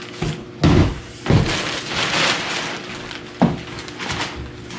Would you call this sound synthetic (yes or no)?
no